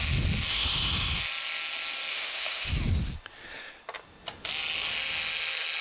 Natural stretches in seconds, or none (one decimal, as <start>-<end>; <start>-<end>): 0.0-0.5; 1.2-2.1; 2.7-5.8